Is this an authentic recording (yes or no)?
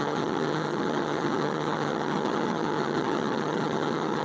no